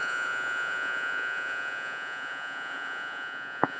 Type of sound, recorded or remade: remade